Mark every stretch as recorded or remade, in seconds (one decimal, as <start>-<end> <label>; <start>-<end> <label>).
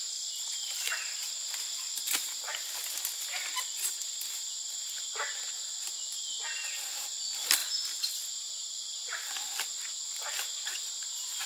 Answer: 0.0-11.5 recorded